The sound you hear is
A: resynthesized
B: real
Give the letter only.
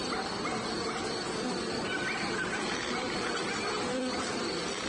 B